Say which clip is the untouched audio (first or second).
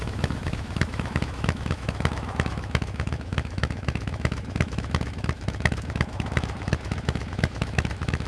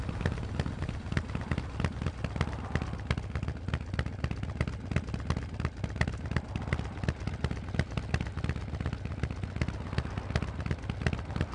second